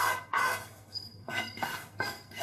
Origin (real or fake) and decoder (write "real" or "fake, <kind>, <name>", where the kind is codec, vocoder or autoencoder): fake, codec, SNAC